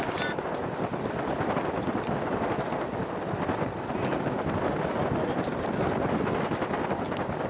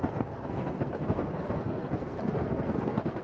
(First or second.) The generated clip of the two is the second